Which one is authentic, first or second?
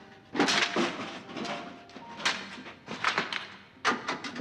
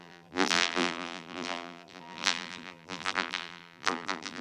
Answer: first